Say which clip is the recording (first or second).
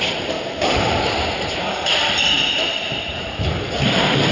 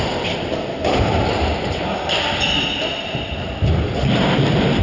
second